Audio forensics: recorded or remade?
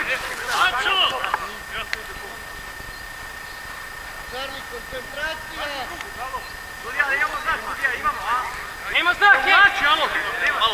recorded